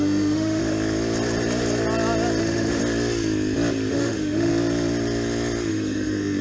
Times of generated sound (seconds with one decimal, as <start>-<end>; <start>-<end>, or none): 0.0-0.6; 2.4-2.8; 3.9-4.5; 5.7-6.4